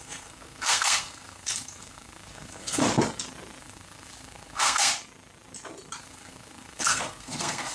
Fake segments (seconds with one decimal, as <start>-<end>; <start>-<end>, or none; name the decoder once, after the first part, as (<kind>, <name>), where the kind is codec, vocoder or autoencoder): 0.0-2.8 (codec, SNAC); 3.6-4.9; 6.0-7.7